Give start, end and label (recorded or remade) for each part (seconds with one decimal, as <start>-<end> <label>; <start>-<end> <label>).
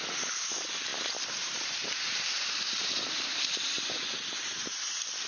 0.0-0.9 recorded; 0.9-1.7 remade; 1.7-2.1 recorded; 2.1-5.3 remade